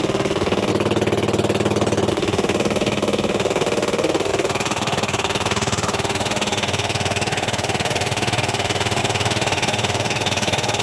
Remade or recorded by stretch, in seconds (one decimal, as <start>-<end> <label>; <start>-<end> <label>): 0.0-0.7 remade; 0.7-2.1 recorded; 2.1-10.8 remade